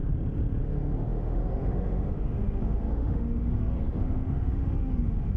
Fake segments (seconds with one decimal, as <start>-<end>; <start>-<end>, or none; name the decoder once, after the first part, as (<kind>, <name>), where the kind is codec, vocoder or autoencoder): 0.6-5.4 (autoencoder, DAC-VAE)